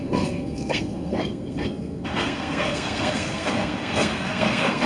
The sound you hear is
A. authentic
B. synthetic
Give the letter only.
B